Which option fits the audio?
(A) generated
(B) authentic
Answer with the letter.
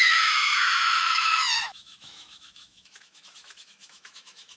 A